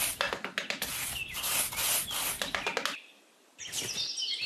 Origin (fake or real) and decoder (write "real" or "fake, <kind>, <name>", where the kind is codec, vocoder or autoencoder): real